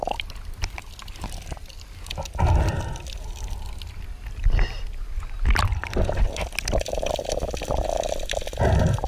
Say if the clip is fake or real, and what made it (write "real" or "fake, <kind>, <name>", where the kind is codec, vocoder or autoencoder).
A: real